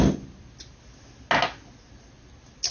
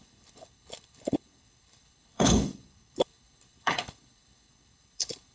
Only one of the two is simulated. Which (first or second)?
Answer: second